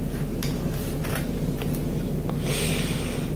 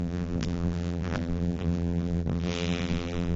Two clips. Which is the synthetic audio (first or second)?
second